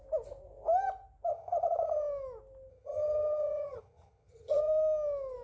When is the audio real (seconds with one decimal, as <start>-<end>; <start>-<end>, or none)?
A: 0.0-1.3; 2.0-2.7; 4.6-5.4